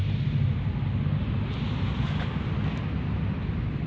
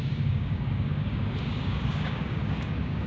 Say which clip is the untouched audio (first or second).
first